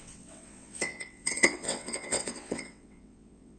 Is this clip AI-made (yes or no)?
yes